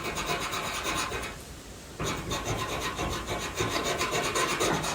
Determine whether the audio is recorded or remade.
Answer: remade